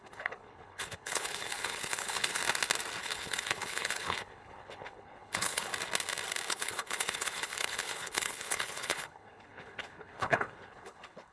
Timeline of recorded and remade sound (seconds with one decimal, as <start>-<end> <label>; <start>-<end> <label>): 0.0-2.4 remade; 2.4-3.0 recorded; 3.0-5.7 remade; 5.7-6.5 recorded; 6.5-11.3 remade